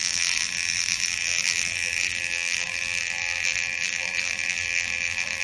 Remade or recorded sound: remade